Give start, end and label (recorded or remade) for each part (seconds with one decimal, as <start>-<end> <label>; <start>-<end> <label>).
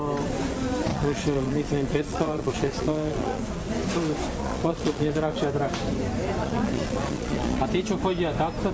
0.0-0.9 recorded; 0.9-3.4 remade; 3.4-4.4 recorded; 4.4-5.4 remade; 5.4-6.4 recorded; 6.4-7.6 remade; 7.6-8.7 recorded